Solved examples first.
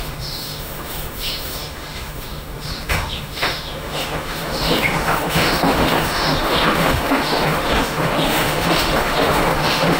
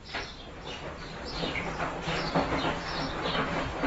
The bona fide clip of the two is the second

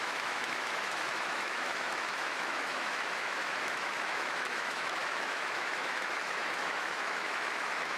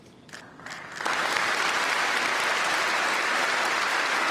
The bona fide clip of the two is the second